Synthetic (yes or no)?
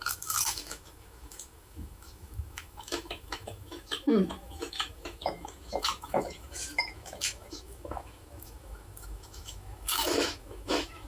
yes